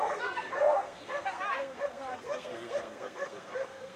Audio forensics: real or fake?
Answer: fake